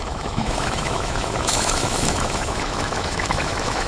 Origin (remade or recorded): remade